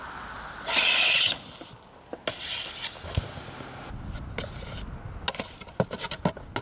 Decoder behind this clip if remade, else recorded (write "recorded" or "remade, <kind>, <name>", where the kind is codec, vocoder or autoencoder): recorded